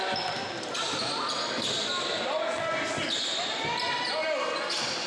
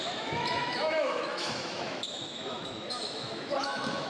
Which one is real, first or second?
first